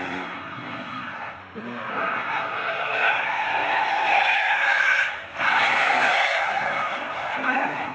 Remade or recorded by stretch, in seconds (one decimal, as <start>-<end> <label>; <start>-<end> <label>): 0.0-1.4 remade; 1.4-1.9 recorded; 1.9-7.9 remade